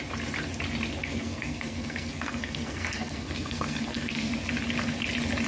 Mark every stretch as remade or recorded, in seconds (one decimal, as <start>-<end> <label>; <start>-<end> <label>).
0.0-1.0 recorded; 1.0-4.3 remade; 4.3-5.5 recorded